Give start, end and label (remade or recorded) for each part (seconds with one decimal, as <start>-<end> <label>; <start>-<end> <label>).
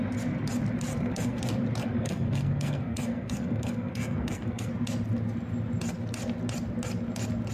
0.0-0.9 recorded; 0.9-1.4 remade; 1.4-1.8 recorded; 1.8-4.7 remade; 4.7-7.5 recorded